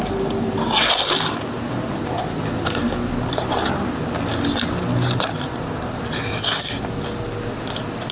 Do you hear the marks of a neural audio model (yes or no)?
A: no